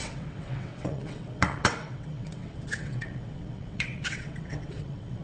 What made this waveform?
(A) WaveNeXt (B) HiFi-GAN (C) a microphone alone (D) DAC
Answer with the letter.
A